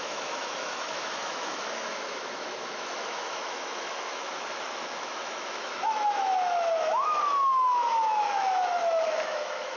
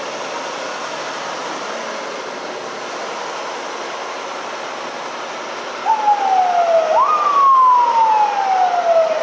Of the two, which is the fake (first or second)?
first